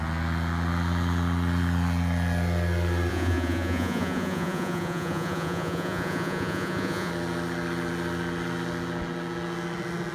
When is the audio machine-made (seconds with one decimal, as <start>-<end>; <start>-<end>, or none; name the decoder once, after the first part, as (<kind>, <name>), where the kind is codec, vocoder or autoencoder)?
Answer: 3.1-7.1 (vocoder, Vocos)